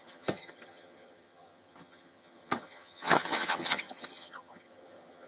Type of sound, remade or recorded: remade